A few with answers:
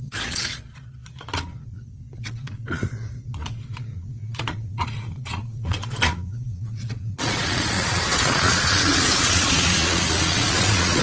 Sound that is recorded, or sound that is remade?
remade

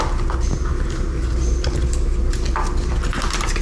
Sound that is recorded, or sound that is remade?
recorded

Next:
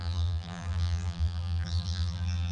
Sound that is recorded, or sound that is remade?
remade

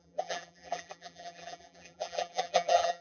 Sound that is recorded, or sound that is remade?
remade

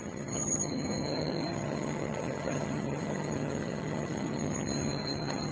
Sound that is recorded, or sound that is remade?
remade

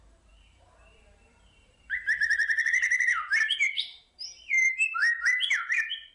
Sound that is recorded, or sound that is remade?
remade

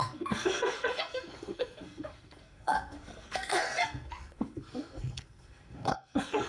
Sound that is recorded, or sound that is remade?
remade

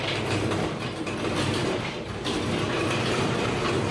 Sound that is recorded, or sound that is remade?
recorded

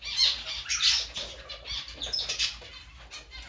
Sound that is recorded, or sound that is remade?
recorded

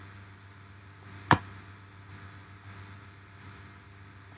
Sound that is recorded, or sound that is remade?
recorded